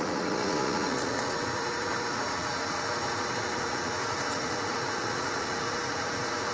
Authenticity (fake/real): fake